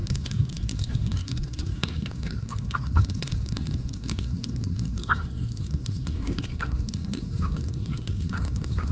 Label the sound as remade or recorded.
remade